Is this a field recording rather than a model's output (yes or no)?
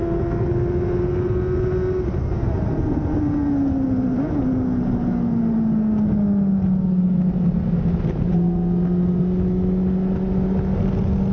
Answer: yes